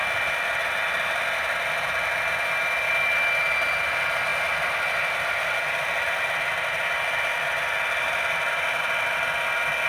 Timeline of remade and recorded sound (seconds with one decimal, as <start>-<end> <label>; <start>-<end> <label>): 0.0-9.9 recorded